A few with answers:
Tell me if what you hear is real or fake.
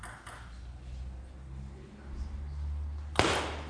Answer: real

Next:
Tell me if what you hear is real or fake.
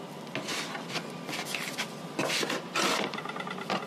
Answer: real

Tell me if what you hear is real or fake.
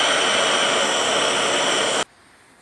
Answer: real